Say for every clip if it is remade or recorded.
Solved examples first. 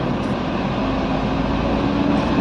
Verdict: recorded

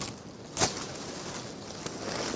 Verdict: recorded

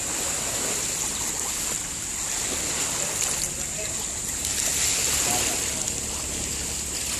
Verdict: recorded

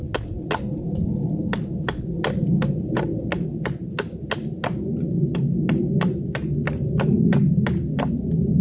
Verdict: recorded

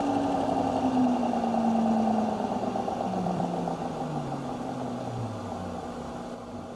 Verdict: recorded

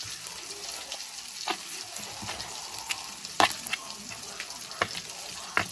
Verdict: recorded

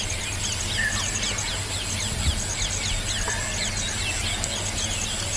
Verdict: recorded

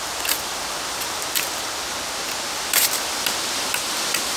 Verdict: remade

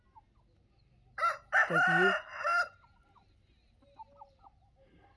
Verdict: recorded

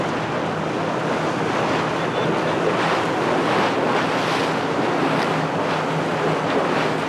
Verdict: recorded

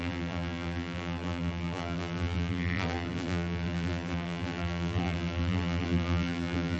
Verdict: remade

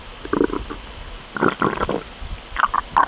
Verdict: recorded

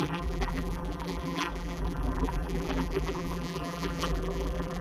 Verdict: remade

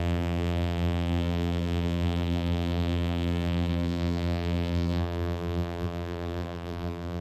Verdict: remade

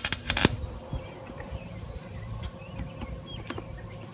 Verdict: remade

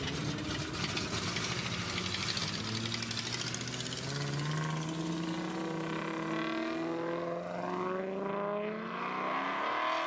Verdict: recorded